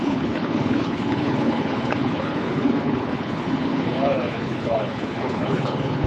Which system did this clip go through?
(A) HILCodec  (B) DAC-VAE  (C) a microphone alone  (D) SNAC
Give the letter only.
A